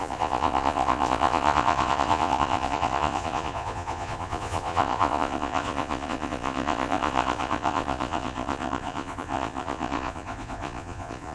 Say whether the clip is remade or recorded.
remade